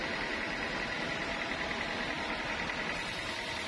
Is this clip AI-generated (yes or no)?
no